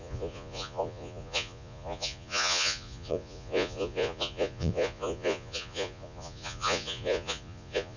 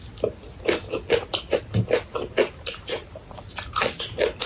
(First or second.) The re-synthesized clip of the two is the first